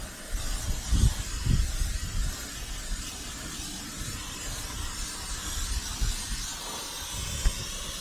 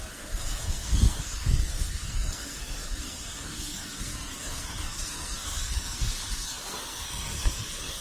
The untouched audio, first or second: first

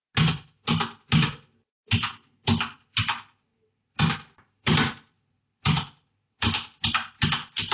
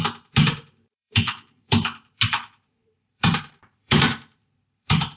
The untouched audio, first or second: first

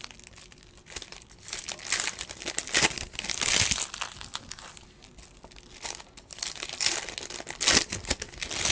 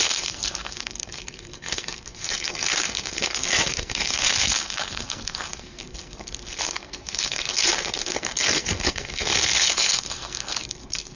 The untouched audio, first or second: first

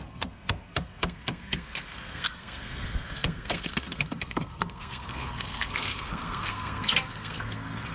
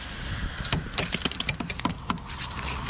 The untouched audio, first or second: second